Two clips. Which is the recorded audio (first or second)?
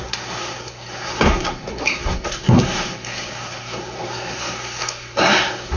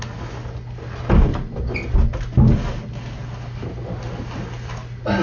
second